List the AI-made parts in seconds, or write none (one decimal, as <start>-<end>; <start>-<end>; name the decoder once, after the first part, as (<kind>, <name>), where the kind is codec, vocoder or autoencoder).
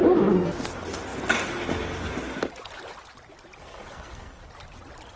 3.6-4.4 (codec, SNAC)